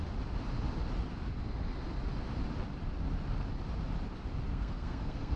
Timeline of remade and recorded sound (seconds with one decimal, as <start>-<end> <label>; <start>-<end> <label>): 0.0-4.5 recorded; 4.5-5.4 remade